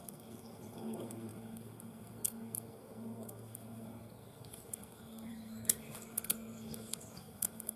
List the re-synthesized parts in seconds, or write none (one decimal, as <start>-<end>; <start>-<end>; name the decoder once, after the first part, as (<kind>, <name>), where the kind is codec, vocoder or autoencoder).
0.0-7.8 (codec, SNAC)